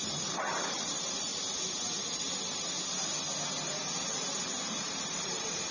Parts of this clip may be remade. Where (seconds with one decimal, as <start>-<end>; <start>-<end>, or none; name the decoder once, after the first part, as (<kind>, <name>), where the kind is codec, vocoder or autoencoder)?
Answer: 0.0-1.3 (vocoder, BigVGAN v2); 4.1-5.7